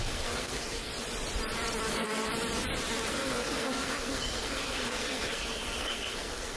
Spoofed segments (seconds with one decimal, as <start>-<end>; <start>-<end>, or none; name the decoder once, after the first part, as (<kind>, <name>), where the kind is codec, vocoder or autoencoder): 0.0-0.9 (codec, SNAC); 1.9-2.3; 3.1-6.6